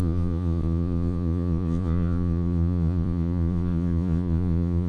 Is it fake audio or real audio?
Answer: fake